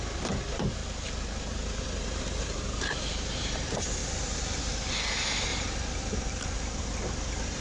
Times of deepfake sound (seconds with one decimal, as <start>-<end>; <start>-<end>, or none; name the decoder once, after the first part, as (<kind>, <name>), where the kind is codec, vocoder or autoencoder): 4.0-4.6 (vocoder, BigVGAN v2); 5.5-6.8